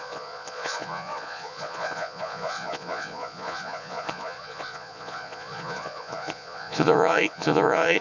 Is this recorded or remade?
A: remade